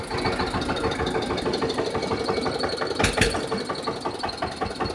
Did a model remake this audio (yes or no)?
no